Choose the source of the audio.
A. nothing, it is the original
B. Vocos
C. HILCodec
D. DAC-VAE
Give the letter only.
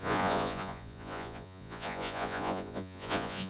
B